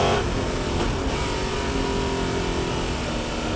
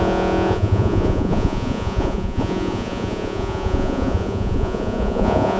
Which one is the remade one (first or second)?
second